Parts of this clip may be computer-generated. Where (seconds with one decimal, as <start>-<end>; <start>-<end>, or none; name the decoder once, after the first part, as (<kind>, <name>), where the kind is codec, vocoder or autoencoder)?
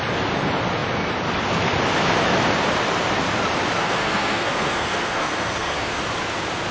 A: 3.8-6.0 (codec, SNAC)